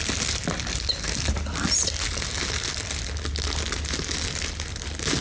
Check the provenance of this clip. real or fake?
real